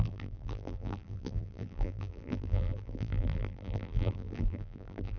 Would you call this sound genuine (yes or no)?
no